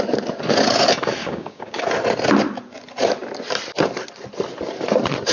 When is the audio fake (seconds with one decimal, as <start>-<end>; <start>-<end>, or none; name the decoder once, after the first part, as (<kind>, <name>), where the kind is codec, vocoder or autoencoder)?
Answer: 1.2-1.8 (codec, DAC)

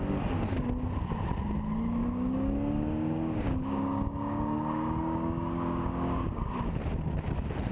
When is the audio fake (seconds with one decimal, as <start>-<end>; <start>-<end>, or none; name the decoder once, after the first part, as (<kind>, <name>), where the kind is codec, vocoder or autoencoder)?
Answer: 2.0-6.5 (codec, DAC)